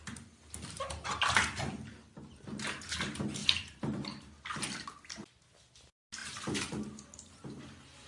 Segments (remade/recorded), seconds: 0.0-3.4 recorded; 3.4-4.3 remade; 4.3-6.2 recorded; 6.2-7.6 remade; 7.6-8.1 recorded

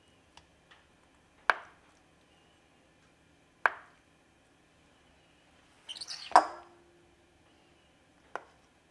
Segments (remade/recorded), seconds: 0.0-8.9 recorded

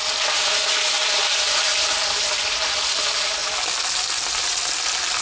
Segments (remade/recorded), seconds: 0.0-5.2 recorded

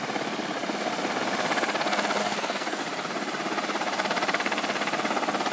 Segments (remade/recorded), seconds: 0.0-2.2 recorded; 2.2-2.8 remade; 2.8-5.5 recorded